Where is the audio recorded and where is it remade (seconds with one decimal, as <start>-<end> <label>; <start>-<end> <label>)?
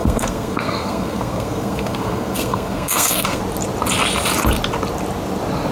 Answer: 0.0-3.4 remade; 3.4-5.7 recorded